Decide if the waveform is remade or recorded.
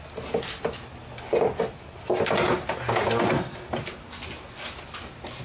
recorded